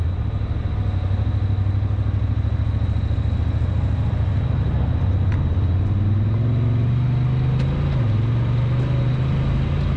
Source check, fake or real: real